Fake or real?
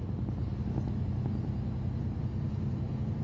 real